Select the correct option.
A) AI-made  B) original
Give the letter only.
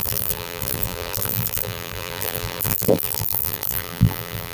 A